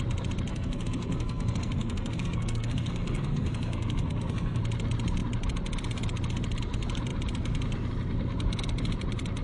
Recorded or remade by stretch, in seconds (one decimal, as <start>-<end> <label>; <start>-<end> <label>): 0.0-0.5 recorded; 0.5-4.6 remade; 4.6-9.4 recorded